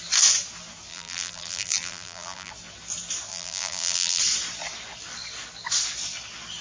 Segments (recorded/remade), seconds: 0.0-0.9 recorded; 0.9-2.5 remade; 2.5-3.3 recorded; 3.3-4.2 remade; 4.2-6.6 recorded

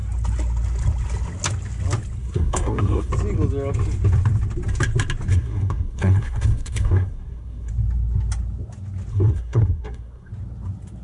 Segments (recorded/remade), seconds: 0.0-2.2 recorded; 2.2-3.1 remade; 3.1-5.3 recorded; 5.3-7.7 remade; 7.7-9.1 recorded; 9.1-10.3 remade; 10.3-11.0 recorded

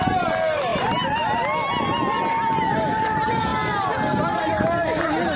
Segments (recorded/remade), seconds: 0.0-5.4 recorded

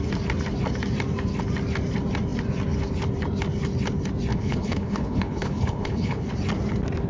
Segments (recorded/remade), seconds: 0.0-4.3 recorded; 4.3-6.3 remade; 6.3-7.1 recorded